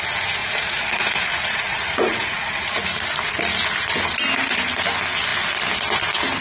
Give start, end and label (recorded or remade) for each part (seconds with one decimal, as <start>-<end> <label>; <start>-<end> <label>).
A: 0.0-0.4 recorded; 0.4-2.8 remade; 2.8-6.4 recorded